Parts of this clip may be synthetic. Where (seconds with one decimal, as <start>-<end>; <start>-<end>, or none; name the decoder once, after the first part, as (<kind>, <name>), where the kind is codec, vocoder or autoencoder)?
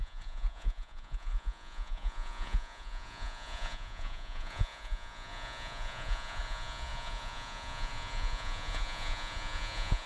0.0-10.1 (vocoder, Vocos)